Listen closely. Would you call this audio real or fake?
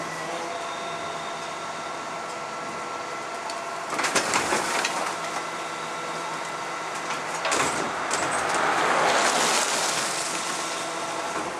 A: real